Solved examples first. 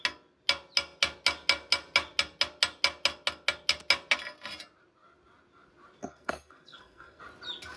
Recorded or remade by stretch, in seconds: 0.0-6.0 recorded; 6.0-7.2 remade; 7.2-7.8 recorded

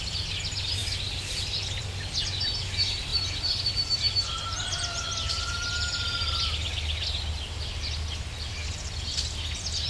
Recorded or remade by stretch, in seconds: 0.0-9.9 recorded

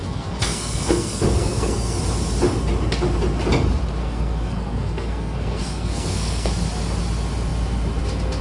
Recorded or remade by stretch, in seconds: 0.0-2.0 remade; 2.0-4.0 recorded; 4.0-6.5 remade; 6.5-8.4 recorded

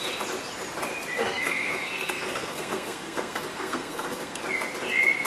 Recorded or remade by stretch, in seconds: 0.0-1.2 recorded; 1.2-4.4 remade; 4.4-5.3 recorded

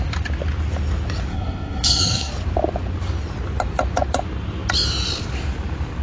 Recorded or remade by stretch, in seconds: 0.0-1.3 recorded; 1.3-2.3 remade; 2.3-6.0 recorded

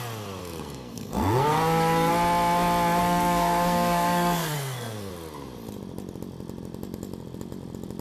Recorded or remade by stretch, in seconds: 0.0-0.4 recorded; 0.4-2.1 remade; 2.1-3.0 recorded; 3.0-5.1 remade; 5.1-8.0 recorded

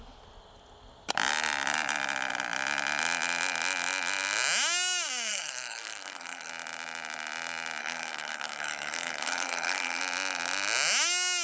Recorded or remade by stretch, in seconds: 0.0-5.3 recorded; 5.3-6.5 remade; 6.5-7.8 recorded; 7.8-10.0 remade; 10.0-11.4 recorded